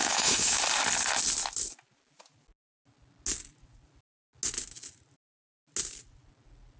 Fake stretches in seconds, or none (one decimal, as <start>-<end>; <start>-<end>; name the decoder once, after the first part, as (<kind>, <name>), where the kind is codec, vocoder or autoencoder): 0.0-0.6 (autoencoder, DAC-VAE)